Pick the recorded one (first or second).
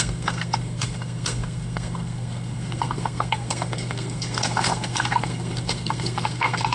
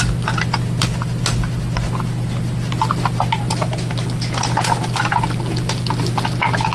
second